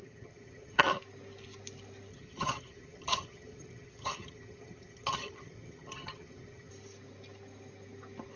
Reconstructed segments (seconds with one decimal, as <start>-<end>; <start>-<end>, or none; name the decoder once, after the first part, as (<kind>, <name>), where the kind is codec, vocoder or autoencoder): 0.0-0.9 (vocoder, HiFi-GAN); 2.1-6.7

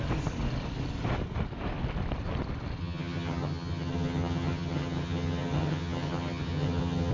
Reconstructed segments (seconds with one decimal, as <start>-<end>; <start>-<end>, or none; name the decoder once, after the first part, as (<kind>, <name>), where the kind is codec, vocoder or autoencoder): 2.8-7.1 (vocoder, HiFi-GAN)

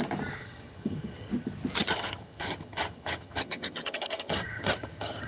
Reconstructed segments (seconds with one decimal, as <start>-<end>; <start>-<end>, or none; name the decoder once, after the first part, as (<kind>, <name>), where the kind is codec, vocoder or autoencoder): 0.4-1.3 (vocoder, HiFi-GAN); 1.8-5.3